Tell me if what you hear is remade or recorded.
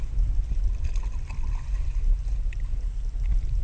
recorded